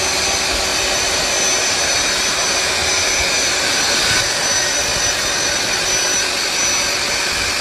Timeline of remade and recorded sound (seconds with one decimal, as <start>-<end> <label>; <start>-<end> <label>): 0.0-0.7 recorded; 0.7-1.2 remade; 1.2-7.6 recorded